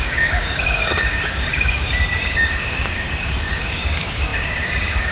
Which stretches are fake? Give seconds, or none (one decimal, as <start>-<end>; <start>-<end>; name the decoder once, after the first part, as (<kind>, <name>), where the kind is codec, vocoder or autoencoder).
0.0-5.1 (codec, DAC)

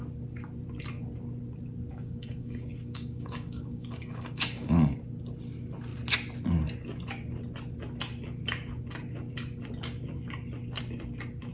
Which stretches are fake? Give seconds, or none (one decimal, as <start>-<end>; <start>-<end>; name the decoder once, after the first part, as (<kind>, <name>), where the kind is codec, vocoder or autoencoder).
1.9-5.0 (codec, DAC)

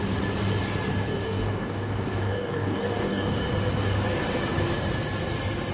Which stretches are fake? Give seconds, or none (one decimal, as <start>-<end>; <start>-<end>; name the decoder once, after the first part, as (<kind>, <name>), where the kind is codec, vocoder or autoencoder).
1.1-3.4 (codec, DAC)

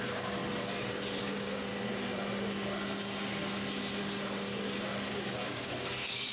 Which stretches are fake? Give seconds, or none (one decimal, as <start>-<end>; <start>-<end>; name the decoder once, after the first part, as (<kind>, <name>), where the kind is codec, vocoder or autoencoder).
0.0-0.4 (codec, DAC); 1.2-1.7; 5.1-6.3

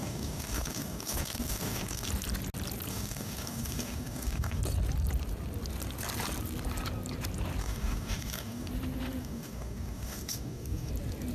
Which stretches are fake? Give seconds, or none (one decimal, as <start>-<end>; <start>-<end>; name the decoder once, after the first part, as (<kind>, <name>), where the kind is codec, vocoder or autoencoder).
0.0-2.1 (codec, DAC); 2.9-4.6; 7.6-8.7; 9.2-10.9